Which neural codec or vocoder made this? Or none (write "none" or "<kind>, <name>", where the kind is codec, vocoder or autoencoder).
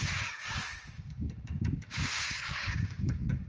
codec, DAC